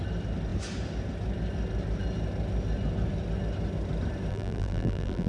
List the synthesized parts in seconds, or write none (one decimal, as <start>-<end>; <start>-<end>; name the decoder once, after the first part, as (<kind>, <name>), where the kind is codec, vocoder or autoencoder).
4.3-5.3 (vocoder, BigVGAN v2)